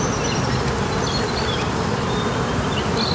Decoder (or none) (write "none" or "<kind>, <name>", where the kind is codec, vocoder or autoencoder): none